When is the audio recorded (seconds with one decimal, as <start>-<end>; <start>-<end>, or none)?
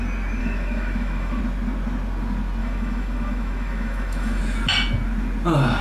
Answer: 0.0-0.4; 1.4-2.6; 4.4-5.8